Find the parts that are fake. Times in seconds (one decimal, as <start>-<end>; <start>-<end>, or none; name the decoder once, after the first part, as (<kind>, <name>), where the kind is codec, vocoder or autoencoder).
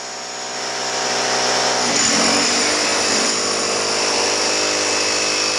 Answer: none